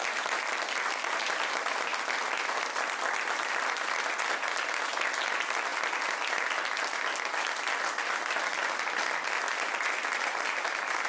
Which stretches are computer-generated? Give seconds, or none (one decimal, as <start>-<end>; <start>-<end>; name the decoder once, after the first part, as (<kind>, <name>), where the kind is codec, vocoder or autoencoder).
none